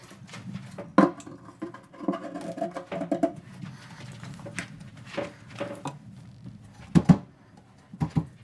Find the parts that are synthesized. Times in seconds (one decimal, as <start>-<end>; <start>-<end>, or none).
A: none